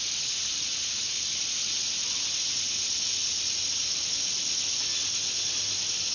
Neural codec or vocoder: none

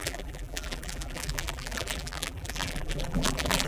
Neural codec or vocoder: vocoder, BigVGAN v2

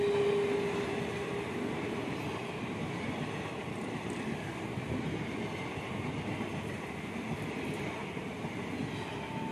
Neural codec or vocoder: none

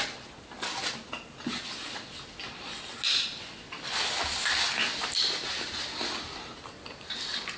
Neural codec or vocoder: none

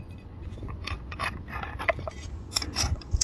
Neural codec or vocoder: vocoder, Vocos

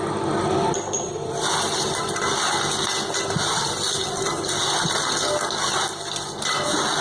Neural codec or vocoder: none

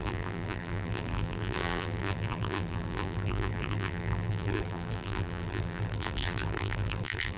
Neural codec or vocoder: vocoder, BigVGAN v2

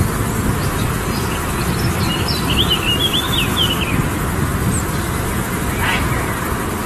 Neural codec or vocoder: none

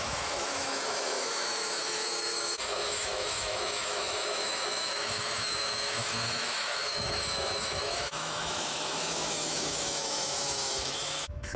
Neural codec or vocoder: autoencoder, DAC-VAE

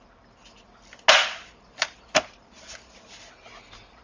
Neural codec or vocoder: none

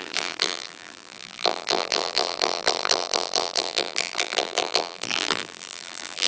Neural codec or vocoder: vocoder, BigVGAN v2